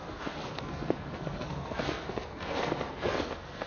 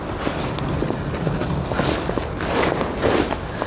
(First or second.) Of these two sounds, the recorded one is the second